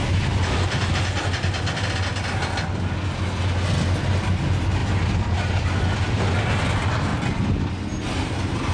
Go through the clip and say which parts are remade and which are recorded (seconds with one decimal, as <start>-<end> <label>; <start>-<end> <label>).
0.0-8.7 recorded